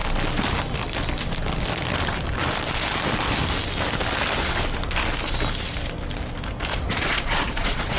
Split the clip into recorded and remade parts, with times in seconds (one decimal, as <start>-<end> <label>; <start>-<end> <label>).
0.0-6.7 recorded; 6.7-8.0 remade